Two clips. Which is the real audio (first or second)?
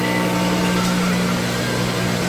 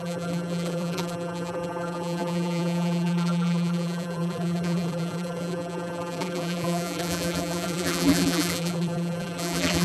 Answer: first